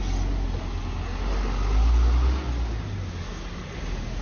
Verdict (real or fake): real